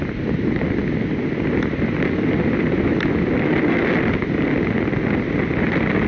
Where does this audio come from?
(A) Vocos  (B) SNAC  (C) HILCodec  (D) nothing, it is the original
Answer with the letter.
D